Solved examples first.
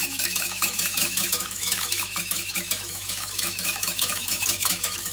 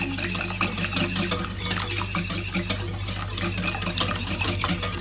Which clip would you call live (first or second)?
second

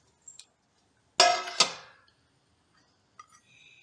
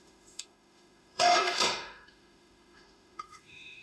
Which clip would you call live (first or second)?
first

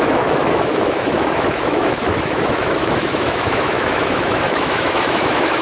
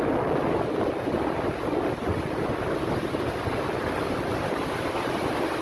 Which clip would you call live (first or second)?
second